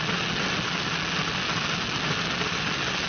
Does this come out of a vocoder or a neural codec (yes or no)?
no